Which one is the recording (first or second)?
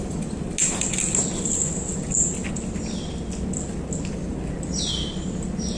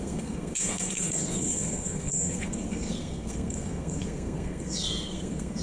first